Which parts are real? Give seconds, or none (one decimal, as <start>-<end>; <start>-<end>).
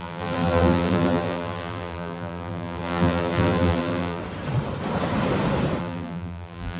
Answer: 4.2-5.8